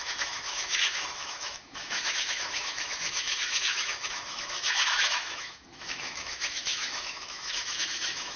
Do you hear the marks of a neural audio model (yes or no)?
yes